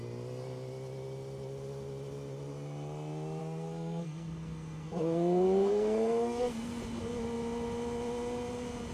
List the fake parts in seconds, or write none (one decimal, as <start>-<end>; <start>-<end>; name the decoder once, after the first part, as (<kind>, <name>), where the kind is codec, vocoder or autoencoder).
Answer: 3.4-6.8 (codec, SNAC)